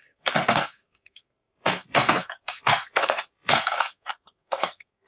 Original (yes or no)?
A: no